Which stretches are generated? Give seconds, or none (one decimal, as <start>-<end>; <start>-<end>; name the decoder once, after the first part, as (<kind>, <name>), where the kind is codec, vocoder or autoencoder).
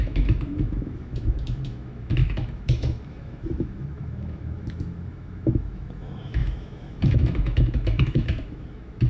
0.0-9.1 (autoencoder, DAC-VAE)